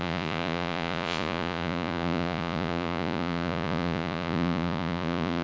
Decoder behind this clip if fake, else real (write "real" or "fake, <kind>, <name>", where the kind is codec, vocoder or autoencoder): fake, vocoder, Vocos